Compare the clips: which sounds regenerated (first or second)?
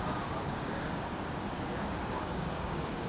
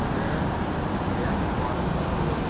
first